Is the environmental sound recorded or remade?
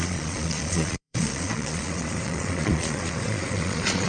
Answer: remade